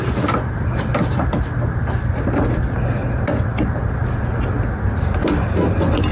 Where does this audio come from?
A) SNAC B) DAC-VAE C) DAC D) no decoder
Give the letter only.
D